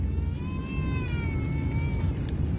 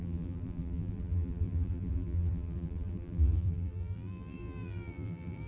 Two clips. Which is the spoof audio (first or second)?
second